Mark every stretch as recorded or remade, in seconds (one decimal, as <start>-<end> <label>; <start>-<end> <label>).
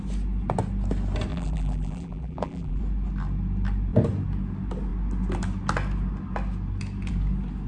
0.0-1.3 recorded; 1.3-2.8 remade; 2.8-7.7 recorded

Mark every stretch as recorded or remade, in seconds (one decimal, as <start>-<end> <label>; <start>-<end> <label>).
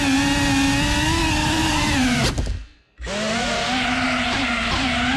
0.0-1.6 recorded; 1.6-2.2 remade; 2.2-5.2 recorded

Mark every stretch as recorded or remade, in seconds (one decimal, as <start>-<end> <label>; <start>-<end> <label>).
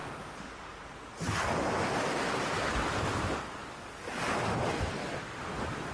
0.0-5.9 recorded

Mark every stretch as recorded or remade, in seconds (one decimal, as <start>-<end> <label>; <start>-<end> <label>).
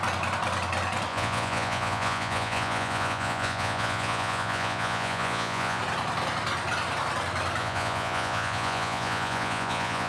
0.0-1.1 recorded; 1.1-5.8 remade; 5.8-7.6 recorded; 7.6-10.1 remade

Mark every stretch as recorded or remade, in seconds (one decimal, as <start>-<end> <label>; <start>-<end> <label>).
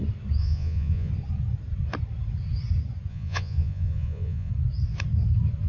0.0-0.4 recorded; 0.4-1.1 remade; 1.1-3.1 recorded; 3.1-4.5 remade; 4.5-5.7 recorded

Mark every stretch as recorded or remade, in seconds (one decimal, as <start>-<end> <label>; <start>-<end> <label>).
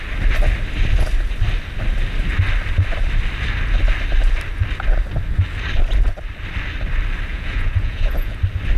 0.0-7.3 recorded; 7.3-8.4 remade; 8.4-8.8 recorded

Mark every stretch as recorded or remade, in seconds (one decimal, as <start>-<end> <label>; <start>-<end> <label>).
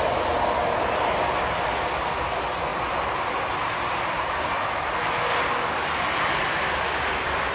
0.0-7.5 recorded